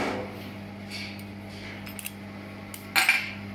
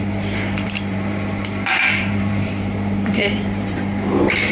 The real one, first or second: first